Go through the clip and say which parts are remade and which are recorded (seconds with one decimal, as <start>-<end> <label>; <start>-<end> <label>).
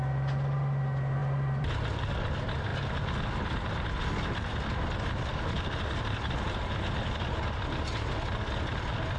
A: 0.0-1.2 recorded; 1.2-2.1 remade; 2.1-9.2 recorded